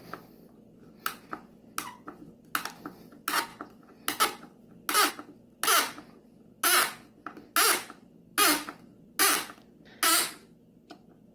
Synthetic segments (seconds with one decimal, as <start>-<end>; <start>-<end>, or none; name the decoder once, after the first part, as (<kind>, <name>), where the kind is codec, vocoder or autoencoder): none

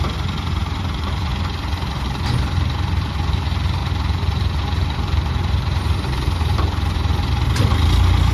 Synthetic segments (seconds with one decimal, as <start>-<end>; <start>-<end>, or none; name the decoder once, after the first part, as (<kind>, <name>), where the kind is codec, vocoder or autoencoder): 0.6-1.4 (vocoder, BigVGAN v2); 3.8-7.1

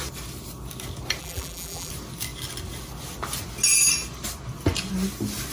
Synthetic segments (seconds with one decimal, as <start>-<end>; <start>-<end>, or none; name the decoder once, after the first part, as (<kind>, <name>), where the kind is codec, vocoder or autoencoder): 1.2-1.9 (vocoder, BigVGAN v2)

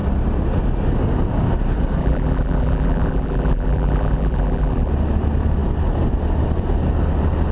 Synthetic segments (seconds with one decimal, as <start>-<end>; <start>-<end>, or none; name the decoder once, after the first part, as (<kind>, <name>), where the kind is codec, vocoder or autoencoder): 2.0-4.9 (vocoder, BigVGAN v2)